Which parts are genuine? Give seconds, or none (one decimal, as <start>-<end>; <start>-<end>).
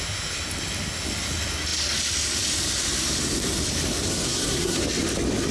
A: 0.0-4.1; 4.8-5.5